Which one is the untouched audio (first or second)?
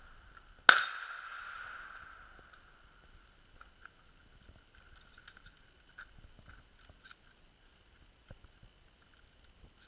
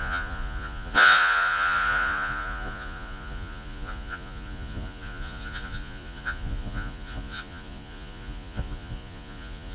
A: first